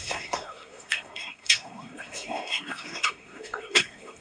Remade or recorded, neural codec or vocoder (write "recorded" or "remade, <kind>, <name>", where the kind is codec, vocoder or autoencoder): remade, codec, SNAC